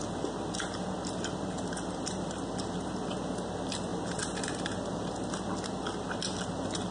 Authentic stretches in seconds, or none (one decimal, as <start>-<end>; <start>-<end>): 0.0-3.9; 5.1-6.9